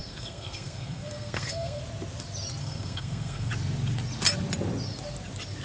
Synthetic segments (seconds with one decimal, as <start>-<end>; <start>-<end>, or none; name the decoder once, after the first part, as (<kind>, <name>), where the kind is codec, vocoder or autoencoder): 0.0-1.8 (codec, SNAC); 2.6-3.5